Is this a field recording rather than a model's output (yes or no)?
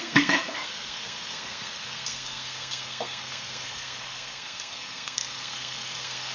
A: no